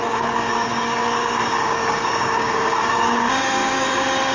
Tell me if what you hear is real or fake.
fake